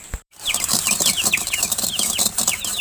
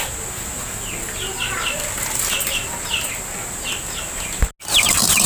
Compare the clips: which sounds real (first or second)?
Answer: second